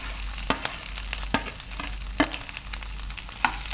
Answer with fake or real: real